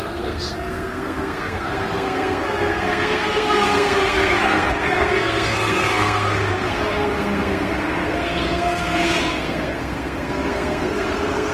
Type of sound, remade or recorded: remade